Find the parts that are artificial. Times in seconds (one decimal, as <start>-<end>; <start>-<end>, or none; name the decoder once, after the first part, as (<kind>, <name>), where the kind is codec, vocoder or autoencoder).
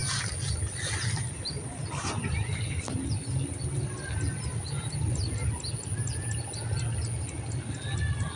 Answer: none